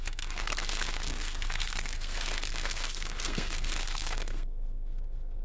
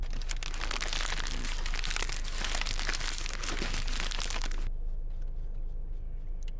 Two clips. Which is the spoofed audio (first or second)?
first